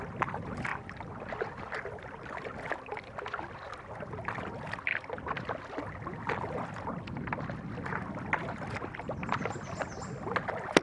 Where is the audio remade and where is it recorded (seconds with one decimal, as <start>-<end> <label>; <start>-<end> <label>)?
0.0-10.8 recorded